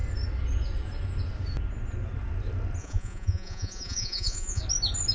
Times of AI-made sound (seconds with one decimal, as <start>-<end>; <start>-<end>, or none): 2.8-4.6